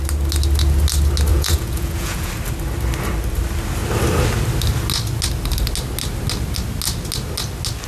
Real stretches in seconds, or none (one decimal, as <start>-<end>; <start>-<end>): 0.0-1.3; 2.3-7.9